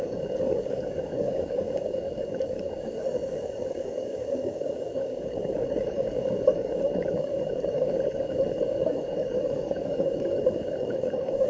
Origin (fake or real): fake